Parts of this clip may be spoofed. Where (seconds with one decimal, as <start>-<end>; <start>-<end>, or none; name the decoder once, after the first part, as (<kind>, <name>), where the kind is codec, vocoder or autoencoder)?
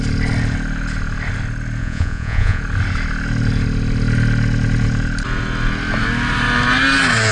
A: 1.8-2.6 (vocoder, Vocos)